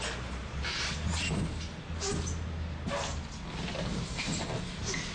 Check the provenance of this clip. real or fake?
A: real